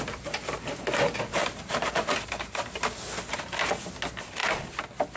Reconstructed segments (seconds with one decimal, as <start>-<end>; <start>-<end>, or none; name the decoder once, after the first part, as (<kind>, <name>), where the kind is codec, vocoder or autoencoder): 1.3-2.9 (vocoder, BigVGAN v2)